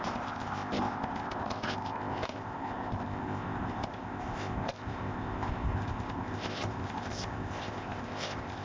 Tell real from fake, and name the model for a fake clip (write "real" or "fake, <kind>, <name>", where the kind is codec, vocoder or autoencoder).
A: fake, codec, ZipCodec